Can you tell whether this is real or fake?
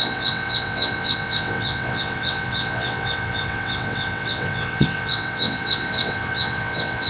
fake